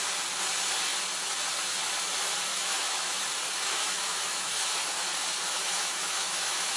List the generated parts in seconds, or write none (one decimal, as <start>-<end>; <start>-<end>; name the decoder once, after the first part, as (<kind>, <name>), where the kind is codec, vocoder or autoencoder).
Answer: 2.5-3.2 (autoencoder, DAC-VAE); 3.6-4.7; 5.5-6.8